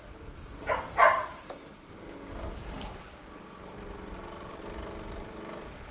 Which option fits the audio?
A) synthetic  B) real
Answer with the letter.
B